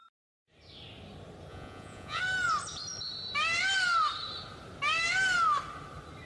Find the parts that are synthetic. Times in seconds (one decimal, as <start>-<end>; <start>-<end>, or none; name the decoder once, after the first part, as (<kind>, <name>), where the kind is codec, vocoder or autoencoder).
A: 1.5-2.2 (vocoder, Vocos)